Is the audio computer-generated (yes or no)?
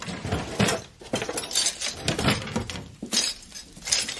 no